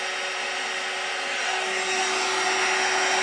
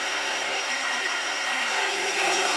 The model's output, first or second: second